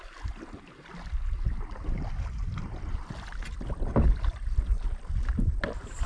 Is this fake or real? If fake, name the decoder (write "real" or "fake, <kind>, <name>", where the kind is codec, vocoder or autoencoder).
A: real